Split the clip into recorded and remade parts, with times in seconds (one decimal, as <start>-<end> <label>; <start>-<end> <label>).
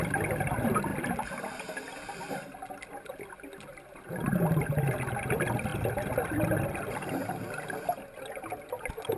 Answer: 0.0-9.2 recorded